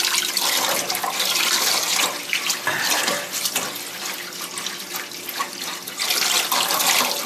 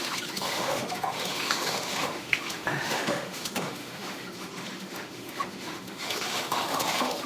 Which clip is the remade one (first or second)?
second